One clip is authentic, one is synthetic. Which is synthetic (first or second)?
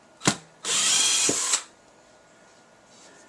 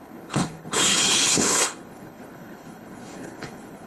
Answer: second